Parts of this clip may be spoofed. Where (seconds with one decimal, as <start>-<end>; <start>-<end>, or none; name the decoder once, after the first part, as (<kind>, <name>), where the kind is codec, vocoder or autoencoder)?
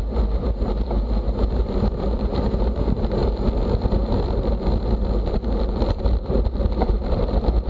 0.0-3.2 (vocoder, BigVGAN v2); 5.9-7.7